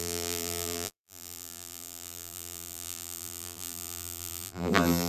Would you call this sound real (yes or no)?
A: no